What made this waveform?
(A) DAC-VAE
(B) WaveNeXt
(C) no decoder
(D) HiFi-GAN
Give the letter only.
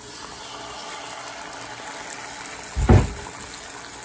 C